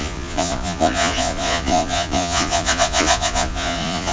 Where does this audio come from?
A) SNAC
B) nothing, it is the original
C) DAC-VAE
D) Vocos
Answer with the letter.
D